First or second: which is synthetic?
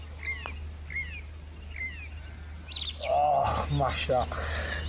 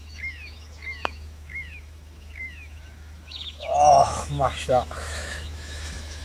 second